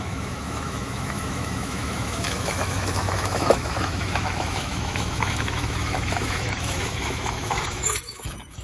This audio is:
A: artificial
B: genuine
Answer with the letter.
A